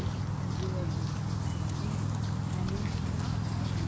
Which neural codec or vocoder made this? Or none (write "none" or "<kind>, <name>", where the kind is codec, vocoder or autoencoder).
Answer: none